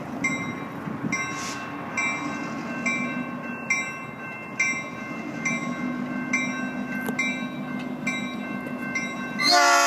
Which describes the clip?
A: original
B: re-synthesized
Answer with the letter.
A